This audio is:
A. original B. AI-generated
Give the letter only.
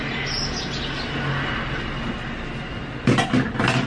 A